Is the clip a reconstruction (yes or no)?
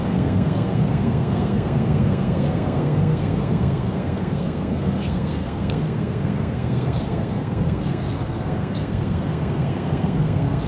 yes